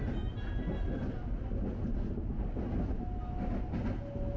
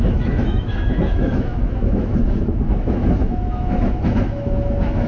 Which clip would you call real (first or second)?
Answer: first